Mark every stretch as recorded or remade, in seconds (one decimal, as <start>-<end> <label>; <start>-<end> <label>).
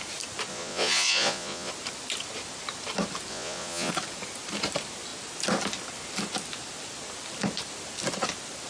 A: 0.0-0.5 recorded; 0.5-1.7 remade; 1.7-3.3 recorded; 3.3-3.9 remade; 3.9-8.7 recorded